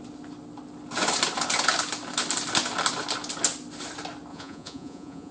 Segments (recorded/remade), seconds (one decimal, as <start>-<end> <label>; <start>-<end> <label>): 0.0-4.3 recorded; 4.3-5.3 remade